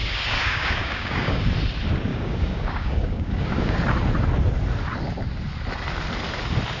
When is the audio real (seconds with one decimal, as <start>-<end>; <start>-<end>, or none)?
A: 1.5-2.1; 3.8-6.8